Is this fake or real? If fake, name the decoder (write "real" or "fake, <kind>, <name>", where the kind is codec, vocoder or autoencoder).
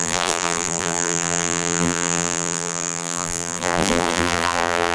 fake, vocoder, BigVGAN v2